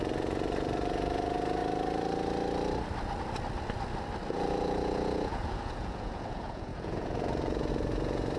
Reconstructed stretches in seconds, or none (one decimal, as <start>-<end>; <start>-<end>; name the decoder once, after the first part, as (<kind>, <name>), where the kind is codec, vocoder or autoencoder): 0.0-1.6 (vocoder, Vocos); 4.3-8.4